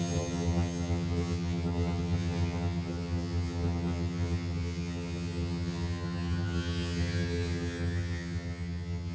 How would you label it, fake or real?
fake